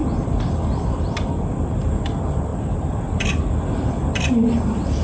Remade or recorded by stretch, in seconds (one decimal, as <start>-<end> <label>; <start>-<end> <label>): 0.0-2.5 recorded; 2.5-3.0 remade; 3.0-5.0 recorded